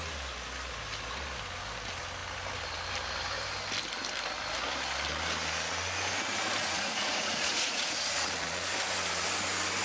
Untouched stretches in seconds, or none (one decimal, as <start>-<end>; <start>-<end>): 0.0-6.6; 8.7-9.8